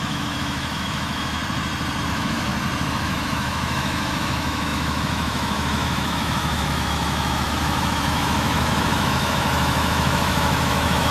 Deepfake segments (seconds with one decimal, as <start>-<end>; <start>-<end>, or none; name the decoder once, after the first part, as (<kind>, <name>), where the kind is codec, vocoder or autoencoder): 0.0-1.4 (autoencoder, DAC-VAE); 2.1-2.5; 3.0-11.1